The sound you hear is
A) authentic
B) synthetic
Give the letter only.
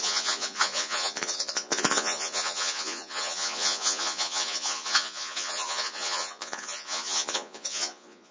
B